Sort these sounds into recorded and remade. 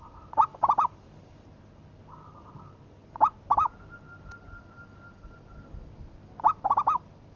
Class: recorded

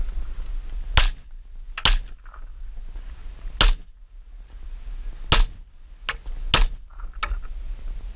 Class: recorded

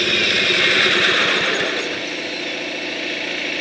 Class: recorded